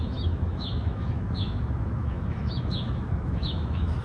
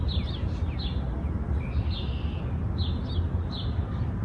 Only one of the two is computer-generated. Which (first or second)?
first